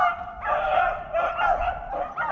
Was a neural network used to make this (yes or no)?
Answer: no